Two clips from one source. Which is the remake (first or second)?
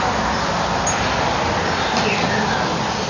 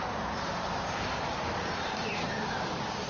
second